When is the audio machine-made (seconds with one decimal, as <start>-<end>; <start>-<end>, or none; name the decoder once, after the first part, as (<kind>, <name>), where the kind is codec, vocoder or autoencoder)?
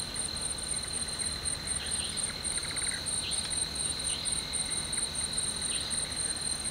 none